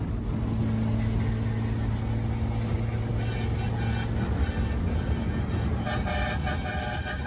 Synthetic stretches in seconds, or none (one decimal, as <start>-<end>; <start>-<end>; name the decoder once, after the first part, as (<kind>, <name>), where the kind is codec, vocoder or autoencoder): none